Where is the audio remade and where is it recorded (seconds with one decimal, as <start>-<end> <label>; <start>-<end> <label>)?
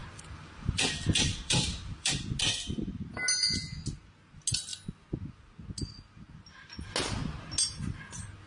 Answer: 0.0-2.2 remade; 2.2-8.5 recorded